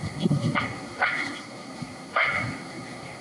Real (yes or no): no